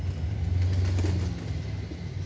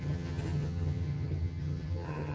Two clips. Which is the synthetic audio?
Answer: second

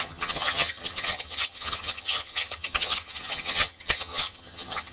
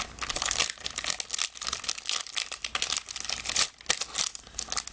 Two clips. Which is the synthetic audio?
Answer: first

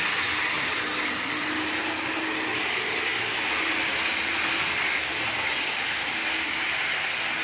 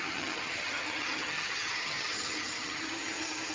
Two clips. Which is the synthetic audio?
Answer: second